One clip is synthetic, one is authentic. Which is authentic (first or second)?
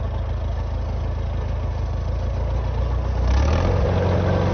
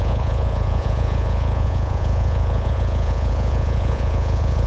first